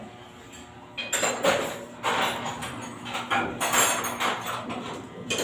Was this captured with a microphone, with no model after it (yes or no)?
yes